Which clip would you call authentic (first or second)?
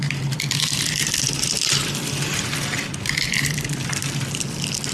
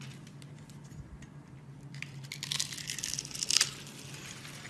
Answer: second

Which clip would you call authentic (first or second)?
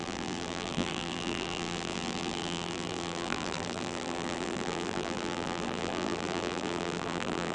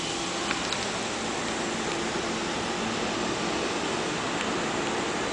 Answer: second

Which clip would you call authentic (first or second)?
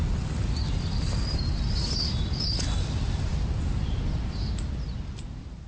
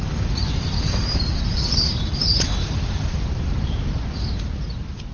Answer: first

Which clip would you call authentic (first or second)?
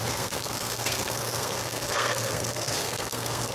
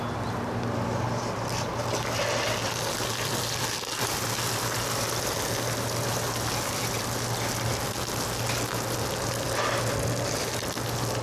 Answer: second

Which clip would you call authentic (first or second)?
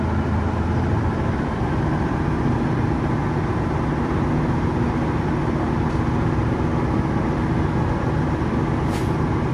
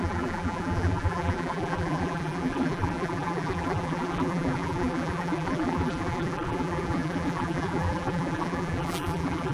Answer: first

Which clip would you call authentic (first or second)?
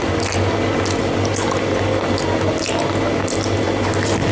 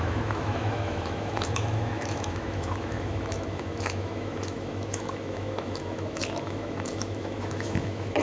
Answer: first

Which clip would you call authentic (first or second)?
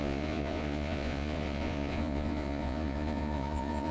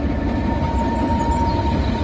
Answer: second